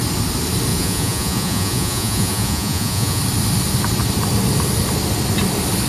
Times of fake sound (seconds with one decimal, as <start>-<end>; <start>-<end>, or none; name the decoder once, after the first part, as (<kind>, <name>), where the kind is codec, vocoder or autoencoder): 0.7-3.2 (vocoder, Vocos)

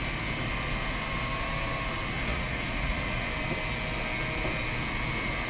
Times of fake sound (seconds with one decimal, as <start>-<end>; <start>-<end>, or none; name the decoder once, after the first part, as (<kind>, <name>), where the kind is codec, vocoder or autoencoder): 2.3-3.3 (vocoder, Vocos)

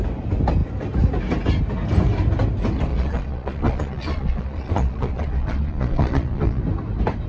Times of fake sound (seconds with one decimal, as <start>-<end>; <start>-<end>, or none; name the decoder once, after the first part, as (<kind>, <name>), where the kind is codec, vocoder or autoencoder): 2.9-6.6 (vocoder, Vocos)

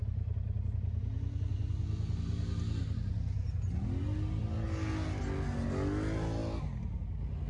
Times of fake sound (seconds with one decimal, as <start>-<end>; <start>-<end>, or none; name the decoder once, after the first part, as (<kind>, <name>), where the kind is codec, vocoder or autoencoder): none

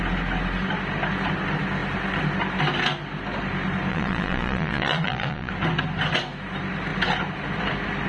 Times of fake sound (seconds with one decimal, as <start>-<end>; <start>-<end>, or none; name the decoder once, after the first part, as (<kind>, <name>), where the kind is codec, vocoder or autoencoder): 3.9-5.5 (vocoder, Vocos)

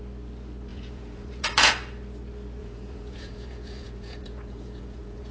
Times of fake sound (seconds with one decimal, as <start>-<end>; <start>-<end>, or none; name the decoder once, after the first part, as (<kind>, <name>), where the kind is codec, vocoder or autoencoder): 0.7-1.7 (vocoder, Vocos); 2.6-5.3